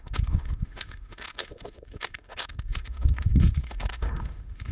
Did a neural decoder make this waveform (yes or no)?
yes